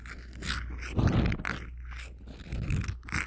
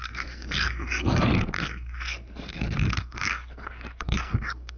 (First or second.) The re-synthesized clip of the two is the second